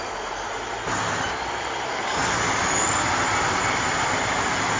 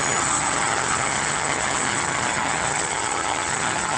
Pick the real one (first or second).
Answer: first